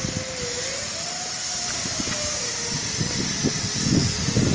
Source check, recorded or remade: recorded